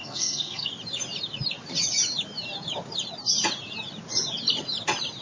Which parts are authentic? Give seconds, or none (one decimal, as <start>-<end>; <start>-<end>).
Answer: 0.7-5.2